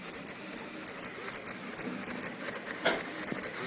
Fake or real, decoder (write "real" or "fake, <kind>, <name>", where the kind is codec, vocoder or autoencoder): real